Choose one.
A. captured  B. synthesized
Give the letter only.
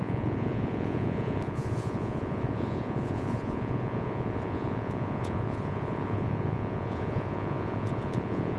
B